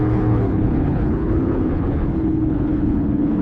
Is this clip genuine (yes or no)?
no